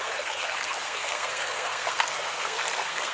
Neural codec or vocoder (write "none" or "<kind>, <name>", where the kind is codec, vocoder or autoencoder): codec, SNAC